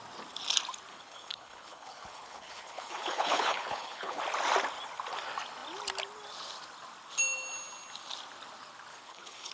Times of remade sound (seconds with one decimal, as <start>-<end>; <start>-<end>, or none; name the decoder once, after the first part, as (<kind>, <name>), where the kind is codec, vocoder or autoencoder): 0.9-4.2 (codec, HILCodec); 8.9-9.5